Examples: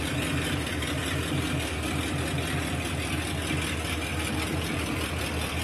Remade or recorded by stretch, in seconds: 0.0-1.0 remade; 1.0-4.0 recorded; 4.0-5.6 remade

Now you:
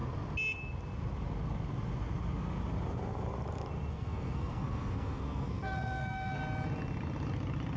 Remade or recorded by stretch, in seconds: 0.0-3.9 recorded; 3.9-6.4 remade; 6.4-7.8 recorded

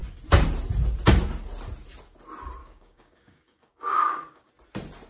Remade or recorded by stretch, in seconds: 0.0-2.6 recorded; 2.6-4.5 remade; 4.5-5.1 recorded

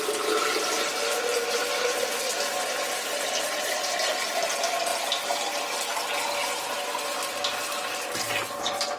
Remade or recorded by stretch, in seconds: 0.0-9.0 recorded